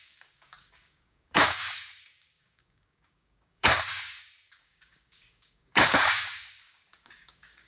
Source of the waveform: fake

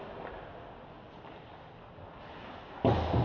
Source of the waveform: real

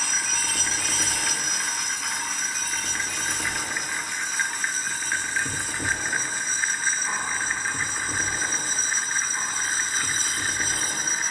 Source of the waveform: real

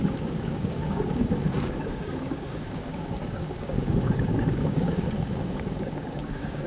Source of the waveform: fake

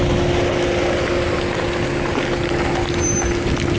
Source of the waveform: real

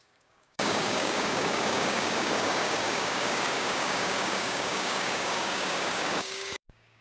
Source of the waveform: fake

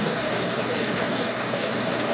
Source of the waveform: fake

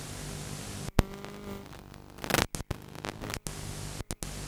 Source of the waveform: real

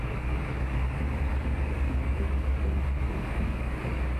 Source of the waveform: fake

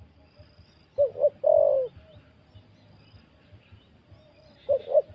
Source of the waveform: real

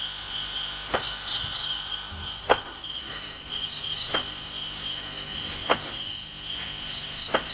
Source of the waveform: real